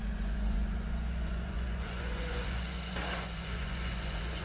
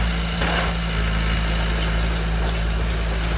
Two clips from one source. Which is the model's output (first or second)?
first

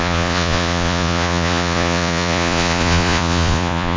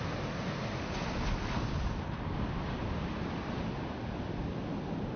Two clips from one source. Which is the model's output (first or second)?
first